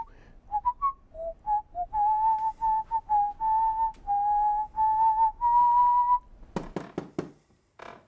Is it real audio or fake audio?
real